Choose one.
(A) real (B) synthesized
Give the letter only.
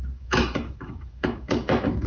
B